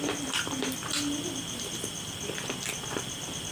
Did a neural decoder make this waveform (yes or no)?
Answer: no